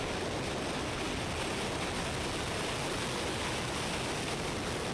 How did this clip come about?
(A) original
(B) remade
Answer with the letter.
A